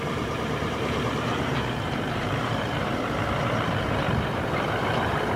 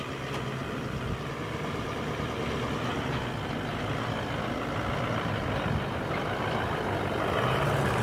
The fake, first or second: first